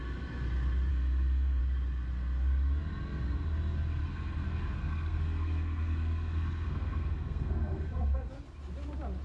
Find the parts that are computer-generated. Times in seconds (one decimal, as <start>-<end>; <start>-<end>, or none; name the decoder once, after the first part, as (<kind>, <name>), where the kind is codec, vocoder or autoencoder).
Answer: 0.9-1.6 (codec, SNAC); 4.0-8.3